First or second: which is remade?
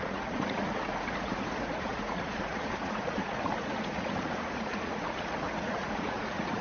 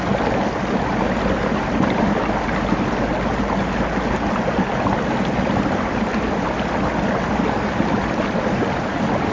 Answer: first